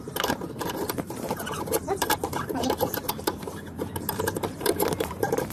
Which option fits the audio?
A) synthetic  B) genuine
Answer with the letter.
A